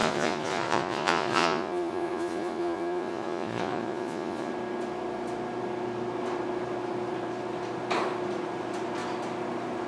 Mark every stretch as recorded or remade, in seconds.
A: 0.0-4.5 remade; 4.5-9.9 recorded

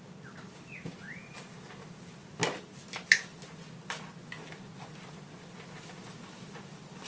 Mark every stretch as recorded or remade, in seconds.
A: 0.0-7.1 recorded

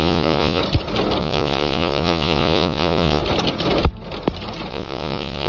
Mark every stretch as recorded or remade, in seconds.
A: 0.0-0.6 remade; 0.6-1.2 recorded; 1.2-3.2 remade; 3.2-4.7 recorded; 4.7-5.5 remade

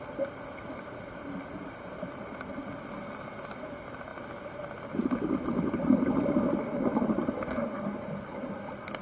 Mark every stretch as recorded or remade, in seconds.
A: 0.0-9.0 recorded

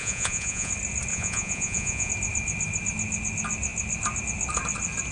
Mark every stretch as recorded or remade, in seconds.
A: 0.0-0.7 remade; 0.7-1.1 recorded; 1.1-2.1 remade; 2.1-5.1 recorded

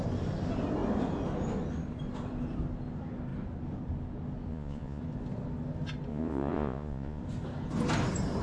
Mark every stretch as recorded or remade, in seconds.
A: 0.0-4.5 recorded; 4.5-5.0 remade; 5.0-6.1 recorded; 6.1-7.2 remade; 7.2-8.4 recorded

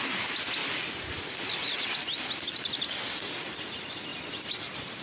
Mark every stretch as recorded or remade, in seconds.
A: 0.0-5.0 recorded

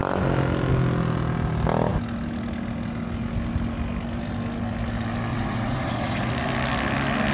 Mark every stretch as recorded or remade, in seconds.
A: 0.0-5.3 recorded; 5.3-6.3 remade; 6.3-7.3 recorded